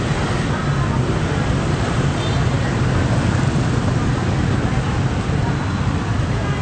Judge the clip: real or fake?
real